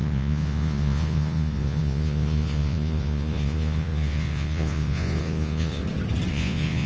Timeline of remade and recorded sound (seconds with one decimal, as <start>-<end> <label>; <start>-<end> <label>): 0.0-5.8 remade; 5.8-6.3 recorded; 6.3-6.9 remade